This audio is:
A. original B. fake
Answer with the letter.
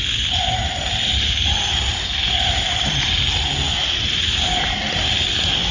A